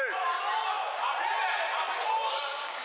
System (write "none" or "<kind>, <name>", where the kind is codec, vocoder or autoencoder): none